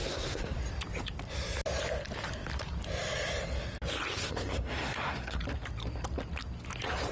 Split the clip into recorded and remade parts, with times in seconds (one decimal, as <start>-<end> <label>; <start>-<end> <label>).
0.0-0.6 remade; 0.6-4.2 recorded; 4.2-5.4 remade; 5.4-7.1 recorded